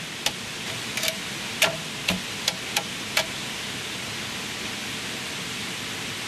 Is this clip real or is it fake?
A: real